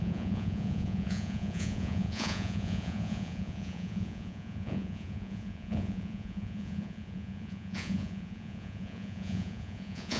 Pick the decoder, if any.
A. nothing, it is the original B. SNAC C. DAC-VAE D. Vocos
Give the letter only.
D